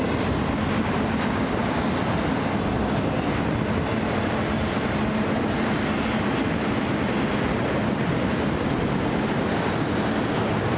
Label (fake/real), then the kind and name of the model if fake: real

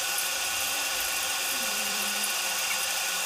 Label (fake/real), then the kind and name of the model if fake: fake, vocoder, BigVGAN v2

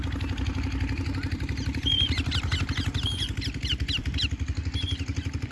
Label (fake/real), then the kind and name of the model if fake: fake, vocoder, BigVGAN v2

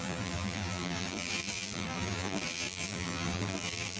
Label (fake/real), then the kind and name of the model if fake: fake, vocoder, BigVGAN v2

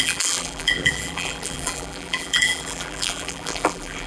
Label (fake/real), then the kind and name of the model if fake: fake, vocoder, BigVGAN v2